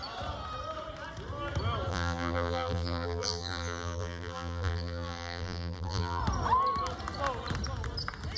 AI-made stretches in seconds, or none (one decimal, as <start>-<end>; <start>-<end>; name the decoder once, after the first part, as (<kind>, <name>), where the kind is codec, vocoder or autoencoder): 1.9-6.2 (vocoder, BigVGAN v2)